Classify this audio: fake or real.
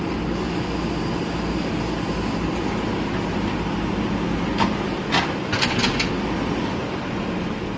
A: real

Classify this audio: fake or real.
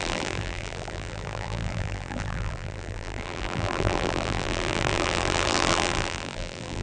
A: fake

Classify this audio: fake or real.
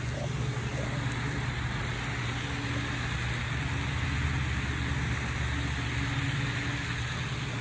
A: real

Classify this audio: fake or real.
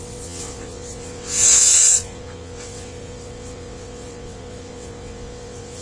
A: fake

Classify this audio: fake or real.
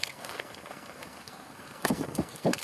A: fake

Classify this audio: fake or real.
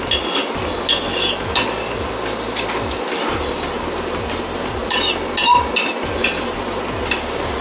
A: real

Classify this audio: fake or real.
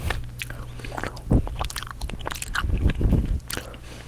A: real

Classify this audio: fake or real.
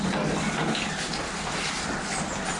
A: real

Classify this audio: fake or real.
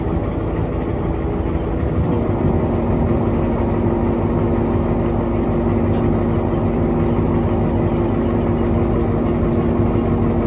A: real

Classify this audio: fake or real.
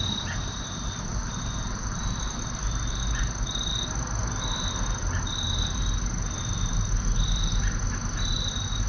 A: real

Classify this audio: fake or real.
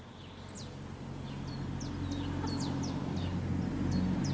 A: real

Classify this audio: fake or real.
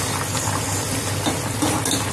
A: real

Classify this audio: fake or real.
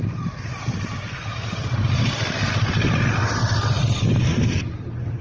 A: real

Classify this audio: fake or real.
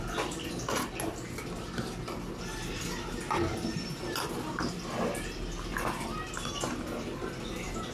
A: real